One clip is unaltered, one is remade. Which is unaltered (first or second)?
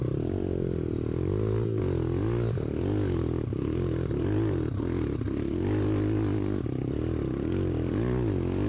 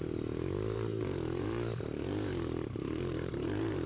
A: first